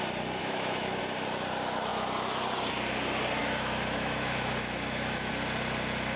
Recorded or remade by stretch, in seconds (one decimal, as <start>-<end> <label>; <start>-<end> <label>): 0.0-0.4 recorded; 0.4-1.0 remade; 1.0-3.4 recorded; 3.4-5.3 remade; 5.3-6.2 recorded